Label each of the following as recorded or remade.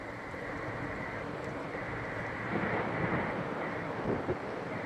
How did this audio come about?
remade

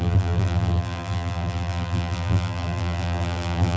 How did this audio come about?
remade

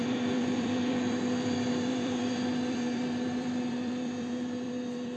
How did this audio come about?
remade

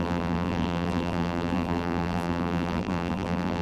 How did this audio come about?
remade